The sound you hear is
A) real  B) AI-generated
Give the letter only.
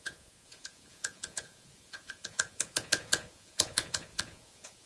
B